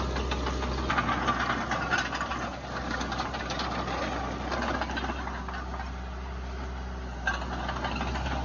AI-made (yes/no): no